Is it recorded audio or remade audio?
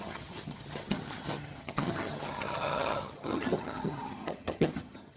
remade